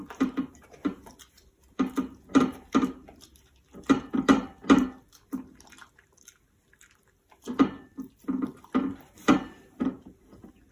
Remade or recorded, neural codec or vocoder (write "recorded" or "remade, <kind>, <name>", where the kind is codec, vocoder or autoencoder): recorded